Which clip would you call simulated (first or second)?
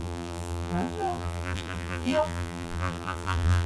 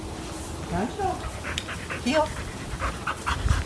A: first